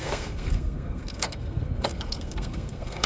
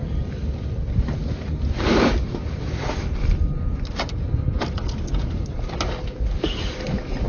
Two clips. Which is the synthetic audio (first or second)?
first